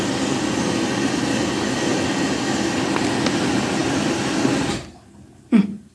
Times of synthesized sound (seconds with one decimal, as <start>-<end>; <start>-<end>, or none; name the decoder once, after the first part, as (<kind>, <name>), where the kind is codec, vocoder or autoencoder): none